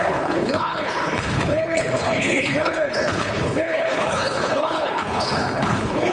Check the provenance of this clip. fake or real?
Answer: fake